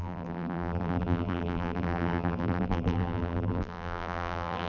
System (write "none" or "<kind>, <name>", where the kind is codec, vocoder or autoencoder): vocoder, BigVGAN v2